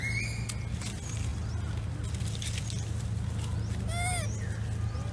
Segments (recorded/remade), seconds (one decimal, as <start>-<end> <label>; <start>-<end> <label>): 0.0-5.1 recorded